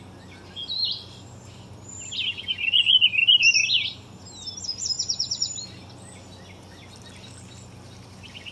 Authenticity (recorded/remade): recorded